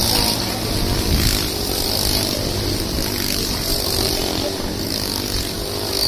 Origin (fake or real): real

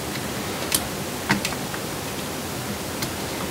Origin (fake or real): real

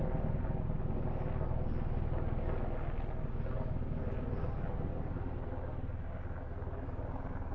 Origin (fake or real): real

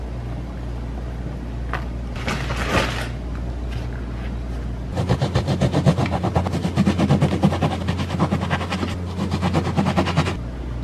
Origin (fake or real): real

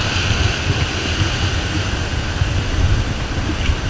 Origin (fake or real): real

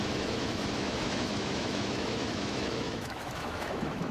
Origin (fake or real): fake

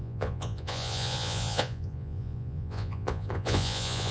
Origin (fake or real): fake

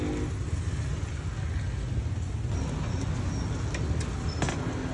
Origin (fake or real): real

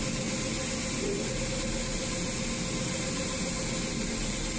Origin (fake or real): real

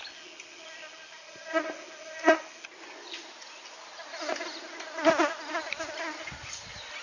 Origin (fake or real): real